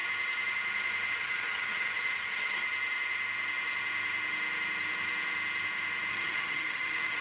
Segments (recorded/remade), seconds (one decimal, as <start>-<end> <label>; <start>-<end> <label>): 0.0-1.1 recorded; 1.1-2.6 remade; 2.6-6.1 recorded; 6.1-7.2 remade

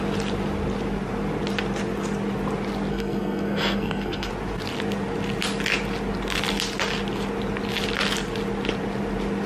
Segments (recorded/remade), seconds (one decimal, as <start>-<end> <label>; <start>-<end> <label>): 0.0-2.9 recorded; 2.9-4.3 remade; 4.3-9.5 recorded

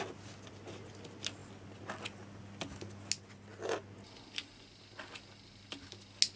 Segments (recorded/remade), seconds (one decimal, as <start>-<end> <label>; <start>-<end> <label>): 0.0-6.4 recorded